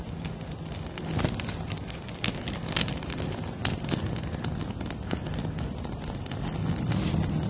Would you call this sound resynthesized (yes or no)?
no